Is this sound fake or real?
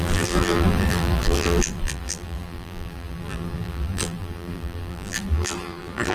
fake